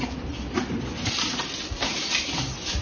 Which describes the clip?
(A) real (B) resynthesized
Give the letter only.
A